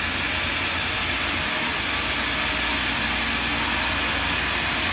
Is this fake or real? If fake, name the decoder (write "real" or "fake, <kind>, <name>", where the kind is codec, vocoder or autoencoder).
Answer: real